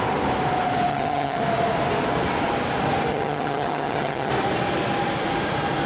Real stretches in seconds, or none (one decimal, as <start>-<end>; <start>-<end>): 0.0-0.9; 1.4-3.1; 4.3-5.9